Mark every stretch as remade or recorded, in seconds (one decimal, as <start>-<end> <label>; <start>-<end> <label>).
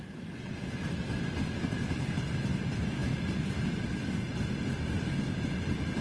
0.0-6.0 recorded